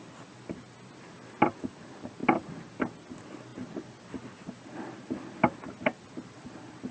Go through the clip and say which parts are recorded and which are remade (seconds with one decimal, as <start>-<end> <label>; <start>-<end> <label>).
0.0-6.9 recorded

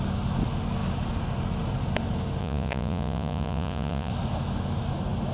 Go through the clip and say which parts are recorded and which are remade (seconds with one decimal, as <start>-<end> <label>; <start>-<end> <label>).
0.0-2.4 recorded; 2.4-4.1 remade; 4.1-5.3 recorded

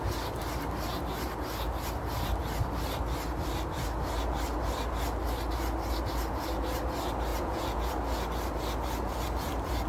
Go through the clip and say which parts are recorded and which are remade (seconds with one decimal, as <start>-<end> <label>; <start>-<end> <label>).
0.0-7.3 recorded; 7.3-7.9 remade; 7.9-9.9 recorded